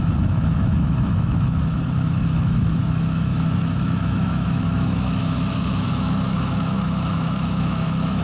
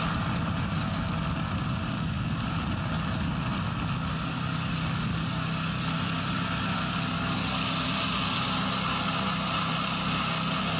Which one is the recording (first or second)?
second